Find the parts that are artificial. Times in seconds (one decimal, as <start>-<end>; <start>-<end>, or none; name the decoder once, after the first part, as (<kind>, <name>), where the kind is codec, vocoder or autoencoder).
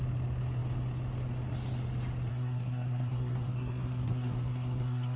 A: 2.3-5.2 (codec, SNAC)